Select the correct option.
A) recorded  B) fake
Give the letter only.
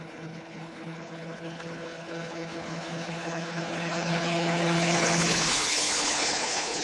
B